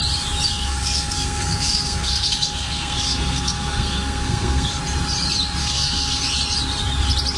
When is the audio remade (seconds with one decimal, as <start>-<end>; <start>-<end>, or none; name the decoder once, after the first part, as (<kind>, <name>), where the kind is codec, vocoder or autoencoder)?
0.5-4.8 (codec, SNAC); 5.6-6.2